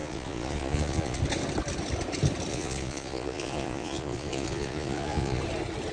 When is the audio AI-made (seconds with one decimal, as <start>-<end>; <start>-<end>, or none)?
0.0-1.2; 2.5-5.4